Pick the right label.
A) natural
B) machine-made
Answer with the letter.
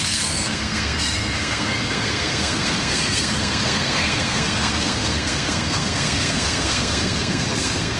B